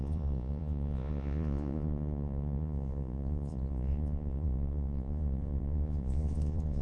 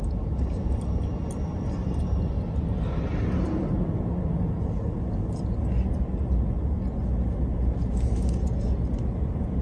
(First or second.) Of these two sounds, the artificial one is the first